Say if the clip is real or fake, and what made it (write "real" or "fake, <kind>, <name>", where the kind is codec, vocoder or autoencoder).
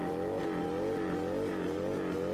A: real